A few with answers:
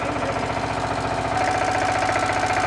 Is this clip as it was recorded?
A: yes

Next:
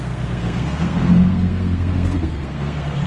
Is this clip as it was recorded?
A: no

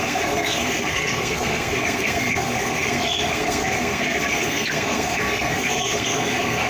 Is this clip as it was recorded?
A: no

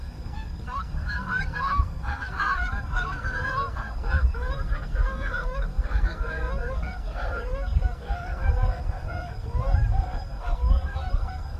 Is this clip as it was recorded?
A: no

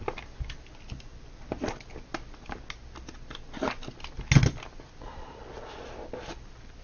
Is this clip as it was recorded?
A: yes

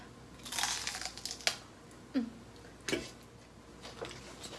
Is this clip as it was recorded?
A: yes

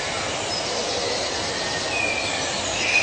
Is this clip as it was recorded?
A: yes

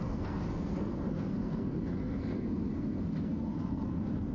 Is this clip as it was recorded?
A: no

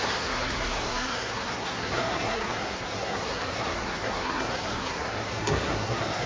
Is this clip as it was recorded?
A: no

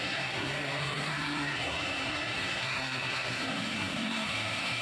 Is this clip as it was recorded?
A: no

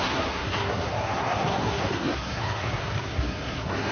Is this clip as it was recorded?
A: no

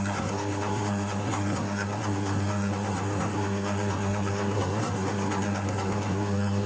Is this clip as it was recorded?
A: no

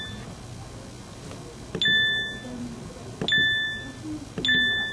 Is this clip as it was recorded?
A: yes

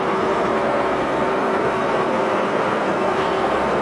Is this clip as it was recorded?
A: no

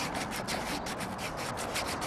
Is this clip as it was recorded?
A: yes